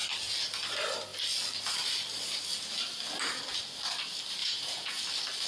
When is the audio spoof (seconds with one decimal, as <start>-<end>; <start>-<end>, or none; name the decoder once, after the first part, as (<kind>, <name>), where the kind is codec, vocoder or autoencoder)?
4.4-5.0 (vocoder, Vocos)